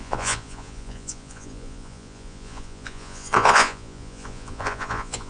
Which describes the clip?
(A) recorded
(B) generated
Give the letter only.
B